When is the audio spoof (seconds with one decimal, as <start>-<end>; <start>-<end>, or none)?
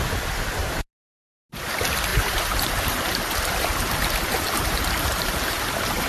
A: 0.6-1.5; 2.1-6.1